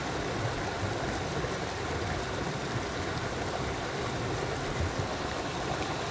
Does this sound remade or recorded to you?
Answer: recorded